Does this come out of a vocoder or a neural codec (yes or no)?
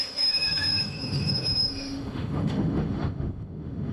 yes